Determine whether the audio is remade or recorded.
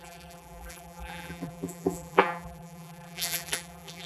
remade